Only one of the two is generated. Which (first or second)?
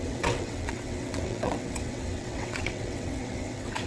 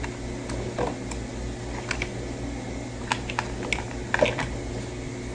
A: first